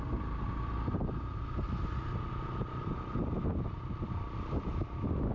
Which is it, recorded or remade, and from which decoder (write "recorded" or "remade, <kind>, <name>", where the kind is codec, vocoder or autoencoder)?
recorded